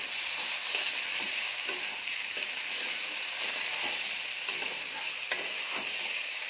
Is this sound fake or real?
real